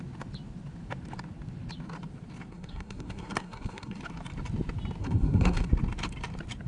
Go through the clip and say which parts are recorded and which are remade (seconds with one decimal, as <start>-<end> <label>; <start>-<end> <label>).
0.0-2.5 recorded; 2.5-4.0 remade; 4.0-5.0 recorded; 5.0-5.7 remade; 5.7-6.7 recorded